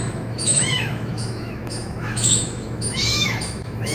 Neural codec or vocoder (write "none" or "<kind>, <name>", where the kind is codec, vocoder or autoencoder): autoencoder, DAC-VAE